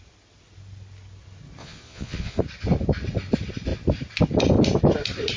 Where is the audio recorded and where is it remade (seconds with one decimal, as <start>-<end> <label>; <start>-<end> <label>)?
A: 0.0-1.6 recorded; 1.6-2.4 remade; 2.4-5.4 recorded